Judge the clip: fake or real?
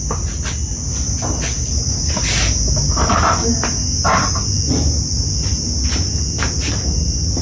real